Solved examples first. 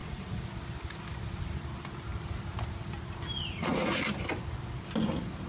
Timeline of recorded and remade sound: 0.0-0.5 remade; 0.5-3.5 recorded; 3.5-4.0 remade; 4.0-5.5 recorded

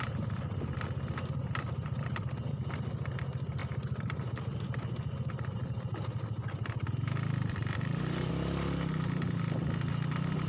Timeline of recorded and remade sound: 0.0-1.4 recorded; 1.4-2.4 remade; 2.4-3.6 recorded; 3.6-8.3 remade; 8.3-10.5 recorded

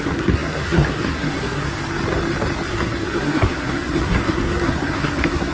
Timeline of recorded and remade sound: 0.0-1.8 remade; 1.8-2.7 recorded; 2.7-5.5 remade

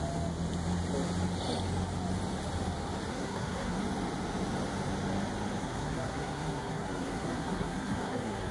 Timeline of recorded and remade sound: 0.0-3.1 recorded; 3.1-3.8 remade; 3.8-5.6 recorded; 5.6-8.5 remade

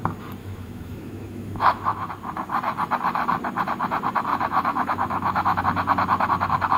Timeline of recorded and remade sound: 0.0-0.4 recorded; 0.4-2.1 remade; 2.1-4.3 recorded; 4.3-5.6 remade; 5.6-6.8 recorded

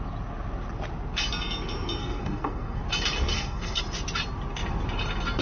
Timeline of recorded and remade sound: 0.0-2.0 recorded; 2.0-2.8 remade; 2.8-3.3 recorded; 3.3-3.8 remade; 3.8-5.4 recorded

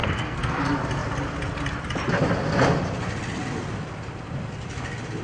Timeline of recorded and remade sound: 0.0-0.6 remade; 0.6-5.2 recorded